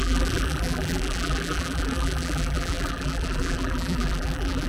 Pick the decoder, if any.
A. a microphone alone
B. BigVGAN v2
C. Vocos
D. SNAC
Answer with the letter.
B